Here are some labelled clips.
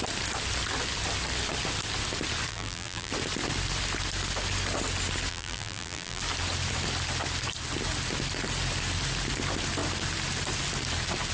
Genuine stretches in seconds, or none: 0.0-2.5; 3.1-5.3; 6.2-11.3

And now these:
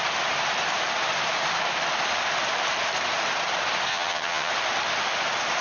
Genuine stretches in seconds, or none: 0.0-3.9; 4.5-5.6

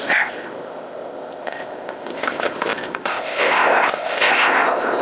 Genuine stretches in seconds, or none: none

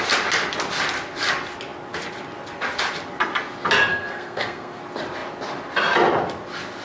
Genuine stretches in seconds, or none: 0.0-3.9; 4.8-6.8

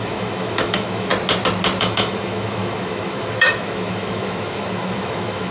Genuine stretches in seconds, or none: 1.1-1.8

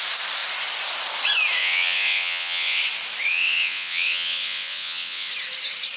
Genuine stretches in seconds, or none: 0.0-1.6; 2.8-3.3; 5.3-6.0

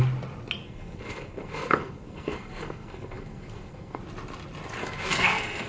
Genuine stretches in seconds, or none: 0.0-0.6; 4.0-4.8